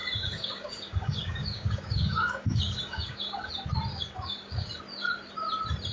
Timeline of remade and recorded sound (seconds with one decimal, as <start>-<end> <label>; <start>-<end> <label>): 0.0-3.5 remade; 3.5-3.9 recorded; 3.9-4.7 remade; 4.7-5.9 recorded